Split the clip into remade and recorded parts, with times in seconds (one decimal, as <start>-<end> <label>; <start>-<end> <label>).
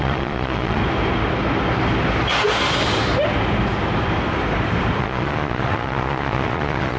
0.0-0.8 remade; 0.8-5.0 recorded; 5.0-7.0 remade